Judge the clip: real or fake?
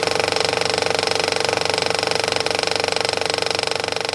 real